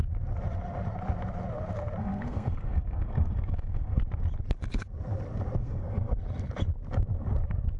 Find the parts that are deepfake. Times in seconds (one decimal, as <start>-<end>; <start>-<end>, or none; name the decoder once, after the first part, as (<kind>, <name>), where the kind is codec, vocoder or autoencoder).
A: 2.0-4.0 (codec, SNAC); 5.6-6.2